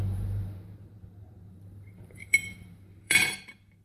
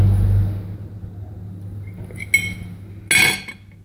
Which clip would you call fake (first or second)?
first